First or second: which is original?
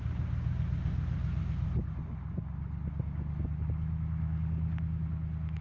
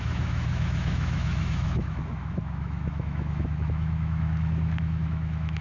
first